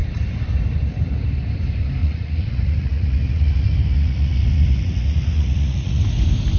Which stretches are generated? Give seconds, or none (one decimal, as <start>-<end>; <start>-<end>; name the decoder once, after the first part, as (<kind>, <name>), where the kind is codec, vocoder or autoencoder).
2.0-6.0 (vocoder, Vocos)